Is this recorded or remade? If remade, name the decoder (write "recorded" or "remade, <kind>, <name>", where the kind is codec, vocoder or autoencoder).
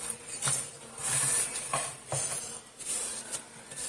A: recorded